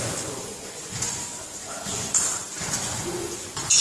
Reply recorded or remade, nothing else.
remade